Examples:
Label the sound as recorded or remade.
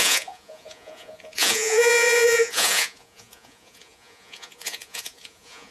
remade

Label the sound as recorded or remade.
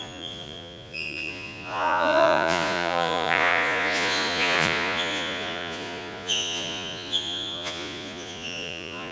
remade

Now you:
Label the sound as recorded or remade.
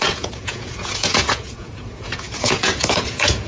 remade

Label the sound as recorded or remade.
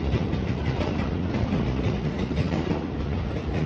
remade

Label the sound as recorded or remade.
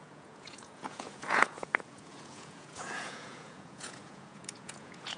remade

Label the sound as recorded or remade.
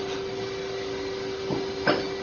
recorded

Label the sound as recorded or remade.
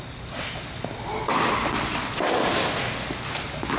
recorded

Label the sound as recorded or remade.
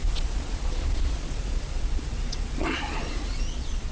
remade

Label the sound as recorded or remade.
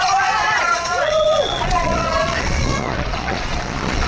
remade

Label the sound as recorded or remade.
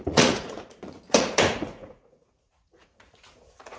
remade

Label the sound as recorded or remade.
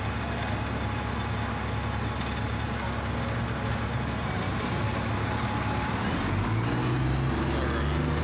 recorded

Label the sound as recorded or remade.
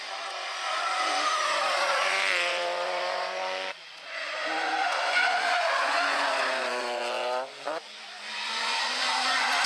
remade